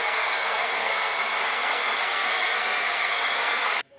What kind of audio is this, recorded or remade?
remade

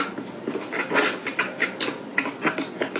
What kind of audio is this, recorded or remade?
recorded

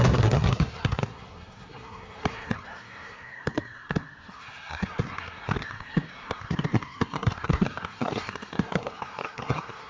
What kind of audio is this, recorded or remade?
remade